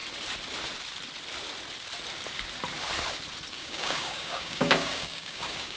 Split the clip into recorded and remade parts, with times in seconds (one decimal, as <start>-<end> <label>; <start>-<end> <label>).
0.0-3.5 recorded; 3.5-5.8 remade